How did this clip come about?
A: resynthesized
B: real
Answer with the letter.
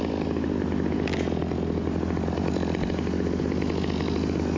B